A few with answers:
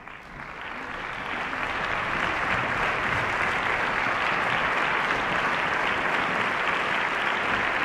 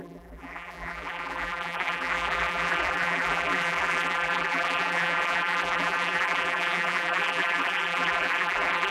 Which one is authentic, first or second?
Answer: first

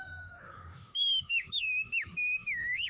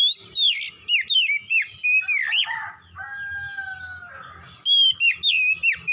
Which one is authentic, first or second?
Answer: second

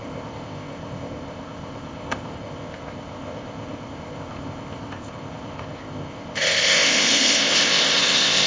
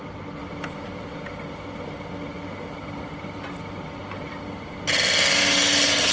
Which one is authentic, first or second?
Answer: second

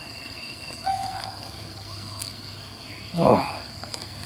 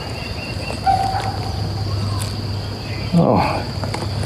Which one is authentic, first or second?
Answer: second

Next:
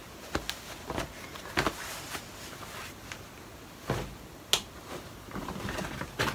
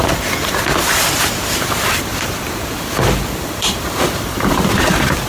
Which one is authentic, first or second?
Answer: first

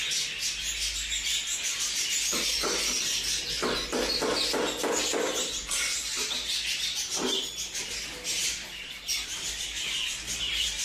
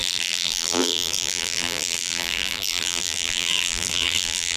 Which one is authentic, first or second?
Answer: first